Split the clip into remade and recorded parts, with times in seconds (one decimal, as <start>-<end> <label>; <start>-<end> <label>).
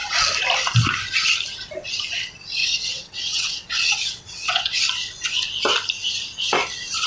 0.0-2.6 recorded; 2.6-4.8 remade; 4.8-7.1 recorded